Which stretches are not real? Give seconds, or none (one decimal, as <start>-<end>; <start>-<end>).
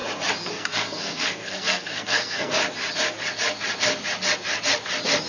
0.5-2.6